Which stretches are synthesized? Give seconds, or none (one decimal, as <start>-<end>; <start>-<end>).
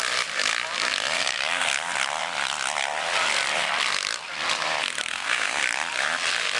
5.1-5.6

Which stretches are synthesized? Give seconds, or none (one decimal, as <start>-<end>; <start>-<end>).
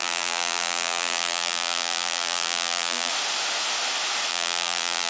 0.0-3.1; 4.3-5.1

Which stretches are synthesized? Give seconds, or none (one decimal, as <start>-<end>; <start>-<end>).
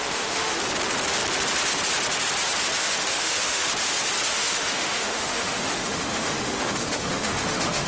0.0-0.6; 2.8-3.7; 4.3-7.9